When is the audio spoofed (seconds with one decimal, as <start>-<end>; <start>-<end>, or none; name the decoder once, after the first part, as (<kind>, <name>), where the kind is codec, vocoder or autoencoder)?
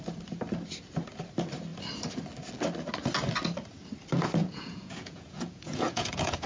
4.4-6.5 (vocoder, Vocos)